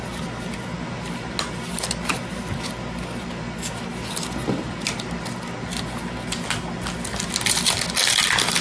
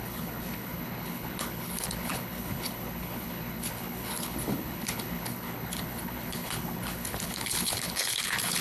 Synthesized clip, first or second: second